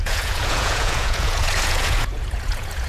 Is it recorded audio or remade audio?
remade